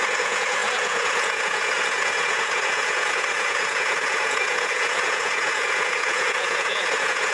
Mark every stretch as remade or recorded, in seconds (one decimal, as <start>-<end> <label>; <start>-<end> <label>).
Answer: 0.0-7.3 remade